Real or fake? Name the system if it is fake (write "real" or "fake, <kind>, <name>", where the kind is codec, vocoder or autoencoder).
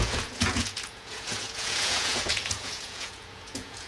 fake, vocoder, Vocos